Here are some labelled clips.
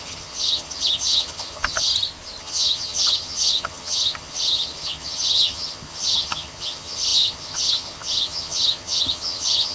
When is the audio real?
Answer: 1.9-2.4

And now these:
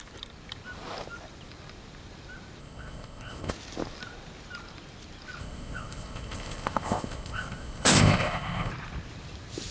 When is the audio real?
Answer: 0.0-2.6; 3.5-5.4; 8.7-9.7

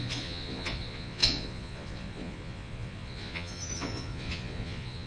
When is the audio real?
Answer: none

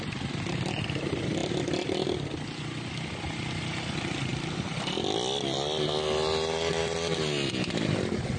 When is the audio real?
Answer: 0.0-8.4

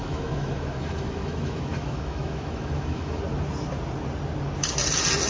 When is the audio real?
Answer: 3.2-5.3

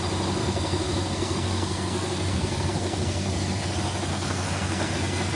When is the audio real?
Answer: 0.0-0.4; 3.6-4.1

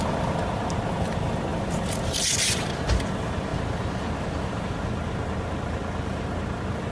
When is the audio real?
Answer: 0.0-6.9

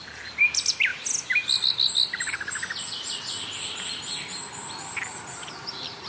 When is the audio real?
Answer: 0.0-6.1